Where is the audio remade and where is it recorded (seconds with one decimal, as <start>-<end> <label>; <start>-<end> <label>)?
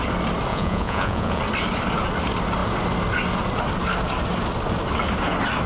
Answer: 0.0-0.5 recorded; 0.5-1.4 remade; 1.4-5.7 recorded